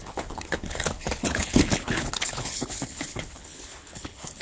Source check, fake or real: fake